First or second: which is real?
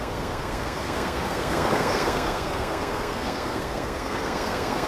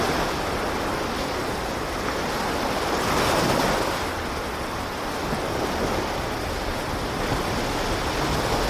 second